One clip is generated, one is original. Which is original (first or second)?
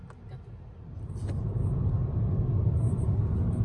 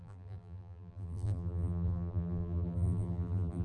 first